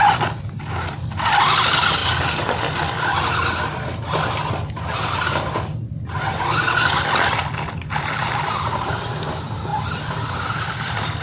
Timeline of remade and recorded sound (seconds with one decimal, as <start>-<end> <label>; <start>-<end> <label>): 0.0-11.2 recorded